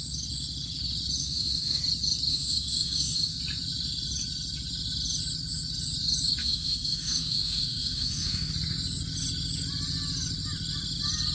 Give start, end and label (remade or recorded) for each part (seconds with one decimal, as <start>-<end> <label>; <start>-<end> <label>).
0.0-1.2 recorded; 1.2-1.8 remade; 1.8-2.3 recorded; 2.3-3.4 remade; 3.4-6.4 recorded; 6.4-8.5 remade; 8.5-11.3 recorded